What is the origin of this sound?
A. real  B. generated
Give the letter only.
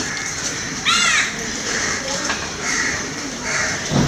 B